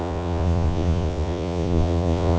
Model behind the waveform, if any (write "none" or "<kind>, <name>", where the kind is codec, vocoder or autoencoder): vocoder, Vocos